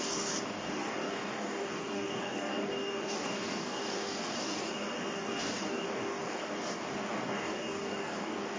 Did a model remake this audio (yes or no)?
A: yes